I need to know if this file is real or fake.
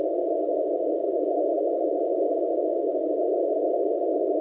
real